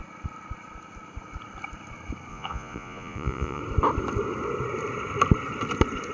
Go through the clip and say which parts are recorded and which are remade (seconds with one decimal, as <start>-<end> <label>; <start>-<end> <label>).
0.0-2.3 recorded; 2.3-3.6 remade; 3.6-6.1 recorded